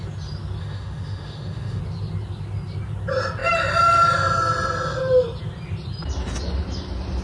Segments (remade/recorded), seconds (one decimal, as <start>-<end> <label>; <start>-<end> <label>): 0.0-0.6 recorded; 0.6-1.8 remade; 1.8-7.2 recorded